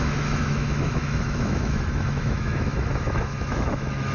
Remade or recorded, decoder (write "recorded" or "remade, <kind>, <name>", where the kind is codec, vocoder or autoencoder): remade, autoencoder, DAC-VAE